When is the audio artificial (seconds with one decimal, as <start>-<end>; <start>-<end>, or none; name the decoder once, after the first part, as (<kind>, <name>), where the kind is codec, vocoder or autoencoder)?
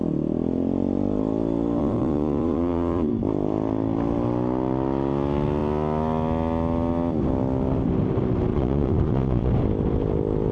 1.8-3.1 (vocoder, Vocos); 8.5-9.5